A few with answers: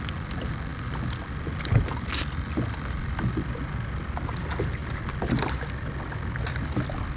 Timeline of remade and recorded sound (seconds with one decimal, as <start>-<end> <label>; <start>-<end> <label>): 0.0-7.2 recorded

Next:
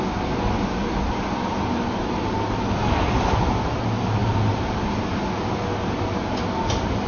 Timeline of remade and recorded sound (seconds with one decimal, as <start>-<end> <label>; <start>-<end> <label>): 0.0-7.1 recorded

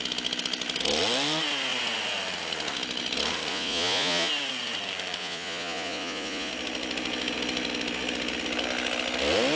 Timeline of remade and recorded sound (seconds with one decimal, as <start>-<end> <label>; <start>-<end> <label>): 0.0-3.5 recorded; 3.5-4.3 remade; 4.3-5.2 recorded; 5.2-6.5 remade; 6.5-9.6 recorded

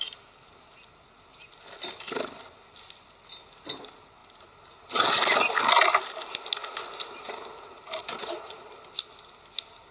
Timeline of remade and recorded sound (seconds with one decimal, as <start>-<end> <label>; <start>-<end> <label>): 0.0-8.0 recorded; 8.0-8.7 remade; 8.7-9.9 recorded